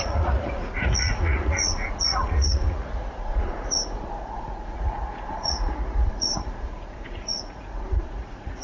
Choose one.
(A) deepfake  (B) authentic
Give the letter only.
A